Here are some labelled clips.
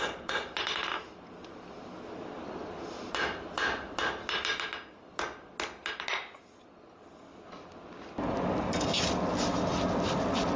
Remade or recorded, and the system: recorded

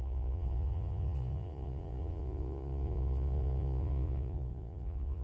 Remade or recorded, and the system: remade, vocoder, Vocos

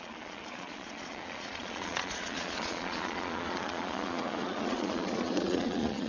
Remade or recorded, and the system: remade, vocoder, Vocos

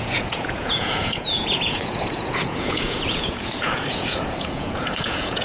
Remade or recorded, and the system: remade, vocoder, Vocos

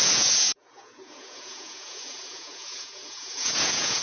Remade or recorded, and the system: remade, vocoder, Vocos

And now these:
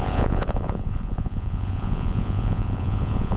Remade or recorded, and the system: remade, vocoder, Vocos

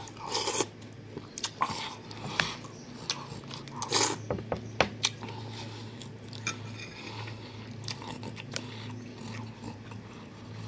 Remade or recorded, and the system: recorded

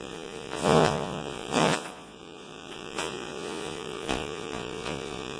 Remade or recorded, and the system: remade, vocoder, Vocos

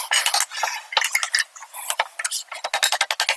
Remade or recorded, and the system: recorded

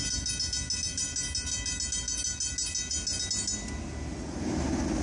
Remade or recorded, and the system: recorded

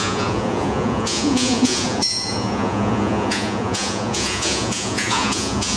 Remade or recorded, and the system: remade, vocoder, Vocos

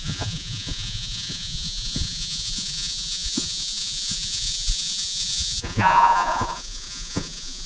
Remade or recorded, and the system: remade, vocoder, Vocos